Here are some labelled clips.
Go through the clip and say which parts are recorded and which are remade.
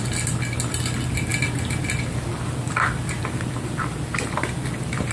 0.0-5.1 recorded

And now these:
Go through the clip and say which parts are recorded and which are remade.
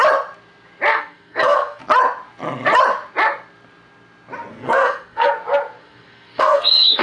0.0-0.9 recorded; 0.9-1.8 remade; 1.8-4.5 recorded; 4.5-5.3 remade; 5.3-5.8 recorded; 5.8-7.0 remade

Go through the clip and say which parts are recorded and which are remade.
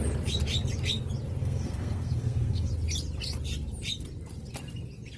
0.0-1.4 recorded; 1.4-2.7 remade; 2.7-5.2 recorded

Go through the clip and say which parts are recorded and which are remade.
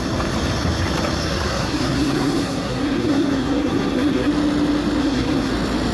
0.0-1.2 recorded; 1.2-4.3 remade; 4.3-5.0 recorded; 5.0-5.5 remade; 5.5-5.9 recorded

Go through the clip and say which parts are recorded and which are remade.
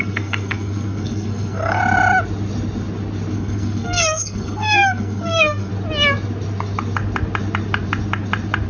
0.0-1.8 remade; 1.8-3.3 recorded; 3.3-5.7 remade; 5.7-8.7 recorded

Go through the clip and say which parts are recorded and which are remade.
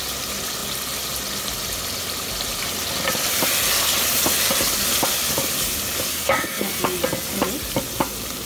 0.0-6.1 recorded; 6.1-6.8 remade; 6.8-8.5 recorded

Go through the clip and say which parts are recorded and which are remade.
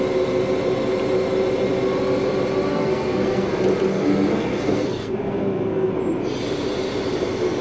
0.0-2.7 recorded; 2.7-3.5 remade; 3.5-3.9 recorded; 3.9-5.9 remade; 5.9-7.6 recorded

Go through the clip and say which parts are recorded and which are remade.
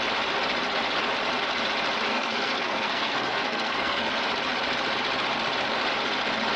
0.0-2.1 recorded; 2.1-4.1 remade; 4.1-6.6 recorded